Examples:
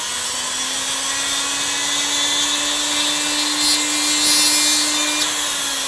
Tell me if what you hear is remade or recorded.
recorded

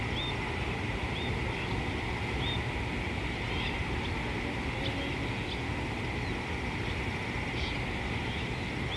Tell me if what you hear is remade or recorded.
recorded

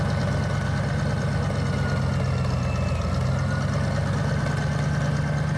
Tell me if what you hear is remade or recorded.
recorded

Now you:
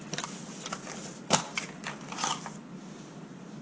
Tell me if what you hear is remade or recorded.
recorded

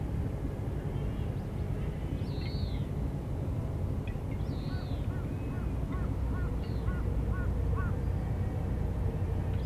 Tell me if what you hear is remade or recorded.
recorded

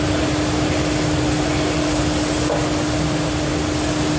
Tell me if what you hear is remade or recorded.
recorded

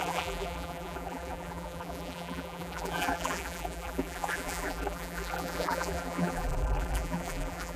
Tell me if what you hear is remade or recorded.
remade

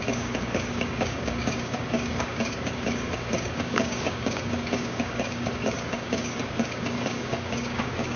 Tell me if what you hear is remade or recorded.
remade